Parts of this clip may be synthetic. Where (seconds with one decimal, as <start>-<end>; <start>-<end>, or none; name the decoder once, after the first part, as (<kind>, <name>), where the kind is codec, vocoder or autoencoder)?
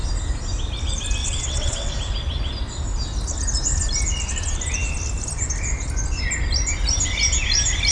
1.2-1.9 (vocoder, WaveNeXt)